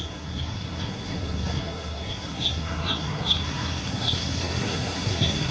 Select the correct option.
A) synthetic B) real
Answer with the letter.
A